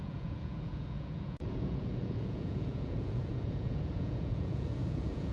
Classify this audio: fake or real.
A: fake